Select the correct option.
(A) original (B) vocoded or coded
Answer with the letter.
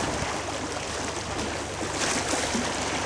A